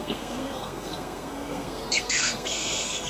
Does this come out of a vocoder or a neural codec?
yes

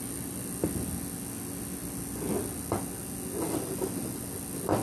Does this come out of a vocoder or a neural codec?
no